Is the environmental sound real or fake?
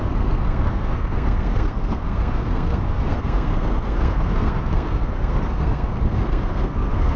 fake